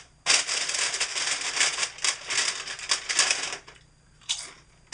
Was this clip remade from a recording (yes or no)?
no